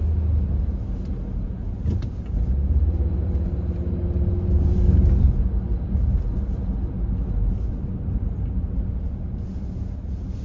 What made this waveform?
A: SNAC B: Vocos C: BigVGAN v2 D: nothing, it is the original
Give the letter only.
D